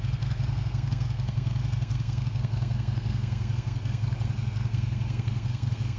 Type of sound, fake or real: fake